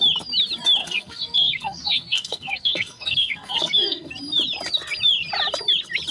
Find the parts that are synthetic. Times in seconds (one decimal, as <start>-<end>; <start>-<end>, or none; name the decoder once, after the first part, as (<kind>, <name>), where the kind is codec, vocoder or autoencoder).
0.8-4.1 (codec, SNAC)

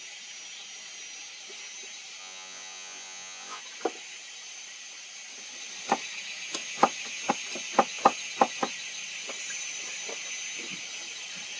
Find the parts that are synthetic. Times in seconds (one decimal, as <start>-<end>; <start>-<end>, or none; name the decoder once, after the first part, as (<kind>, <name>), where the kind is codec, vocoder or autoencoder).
2.2-3.6 (vocoder, Vocos)

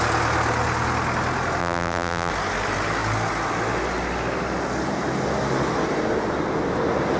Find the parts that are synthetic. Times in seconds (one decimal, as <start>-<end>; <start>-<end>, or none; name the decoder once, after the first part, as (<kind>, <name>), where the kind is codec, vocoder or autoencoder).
1.6-2.3 (vocoder, BigVGAN v2)

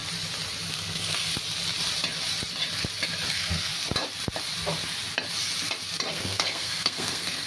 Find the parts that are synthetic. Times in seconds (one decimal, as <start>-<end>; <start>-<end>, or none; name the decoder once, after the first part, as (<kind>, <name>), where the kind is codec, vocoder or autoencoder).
0.7-1.3 (codec, SNAC); 3.3-3.7; 6.1-7.5

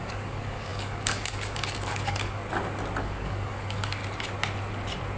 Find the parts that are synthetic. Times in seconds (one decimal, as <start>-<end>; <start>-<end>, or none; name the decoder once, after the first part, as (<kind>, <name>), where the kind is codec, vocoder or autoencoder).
0.0-2.4 (codec, DAC); 3.0-4.0

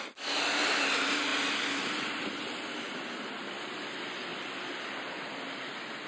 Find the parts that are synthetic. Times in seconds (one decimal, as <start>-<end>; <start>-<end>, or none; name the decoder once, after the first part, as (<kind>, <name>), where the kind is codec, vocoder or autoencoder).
none